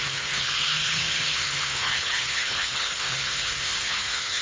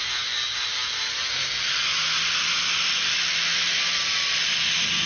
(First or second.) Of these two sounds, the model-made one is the first